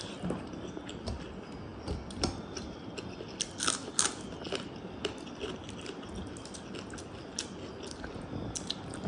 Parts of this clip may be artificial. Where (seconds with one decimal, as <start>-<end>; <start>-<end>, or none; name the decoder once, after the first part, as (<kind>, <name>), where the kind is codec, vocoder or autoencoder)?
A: none